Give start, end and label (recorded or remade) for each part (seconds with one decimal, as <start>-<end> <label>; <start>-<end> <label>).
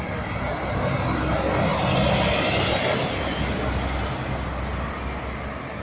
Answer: 0.0-5.8 recorded